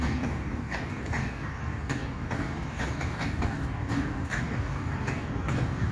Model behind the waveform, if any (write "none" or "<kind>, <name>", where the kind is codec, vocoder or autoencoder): codec, DAC